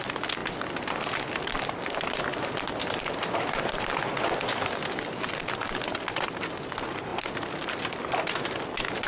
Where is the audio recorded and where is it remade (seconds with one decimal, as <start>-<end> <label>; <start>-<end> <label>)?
0.0-9.1 recorded